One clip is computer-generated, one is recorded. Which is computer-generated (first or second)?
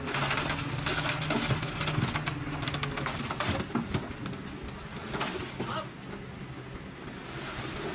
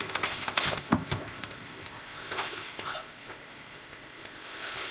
second